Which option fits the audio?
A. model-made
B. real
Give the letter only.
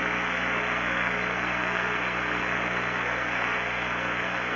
A